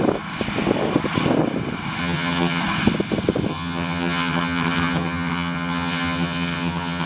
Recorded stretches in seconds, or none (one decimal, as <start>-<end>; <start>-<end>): 0.0-2.0; 2.6-3.5